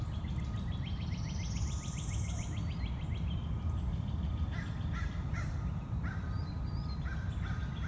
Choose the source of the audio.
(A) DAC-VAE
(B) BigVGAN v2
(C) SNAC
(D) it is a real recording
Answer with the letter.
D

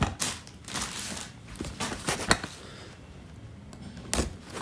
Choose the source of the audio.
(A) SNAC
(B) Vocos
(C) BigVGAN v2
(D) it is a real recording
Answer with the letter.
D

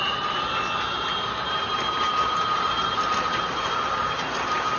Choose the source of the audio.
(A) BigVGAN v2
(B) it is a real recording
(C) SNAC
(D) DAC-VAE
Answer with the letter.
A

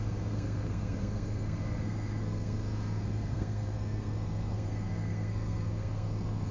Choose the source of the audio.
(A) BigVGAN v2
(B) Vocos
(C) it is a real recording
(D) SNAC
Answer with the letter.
D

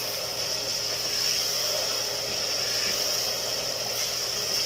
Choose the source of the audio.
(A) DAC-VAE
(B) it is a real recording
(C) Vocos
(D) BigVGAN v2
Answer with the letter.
B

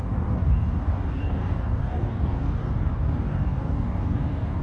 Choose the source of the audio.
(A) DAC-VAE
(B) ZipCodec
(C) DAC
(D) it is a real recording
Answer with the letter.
C